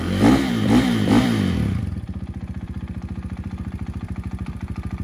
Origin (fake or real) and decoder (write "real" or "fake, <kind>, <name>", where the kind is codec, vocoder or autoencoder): fake, vocoder, BigVGAN v2